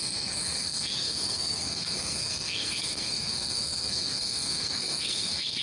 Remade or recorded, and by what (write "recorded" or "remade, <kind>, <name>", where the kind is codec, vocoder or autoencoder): remade, codec, SNAC